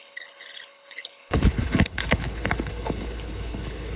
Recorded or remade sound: remade